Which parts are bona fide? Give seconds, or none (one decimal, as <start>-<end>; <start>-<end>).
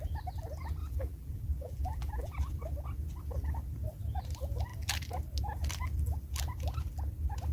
0.0-0.8; 2.5-7.5